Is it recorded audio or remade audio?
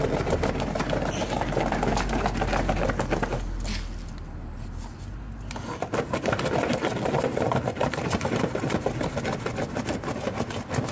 recorded